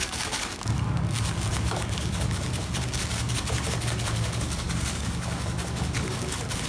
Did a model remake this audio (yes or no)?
yes